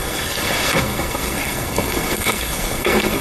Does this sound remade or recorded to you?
remade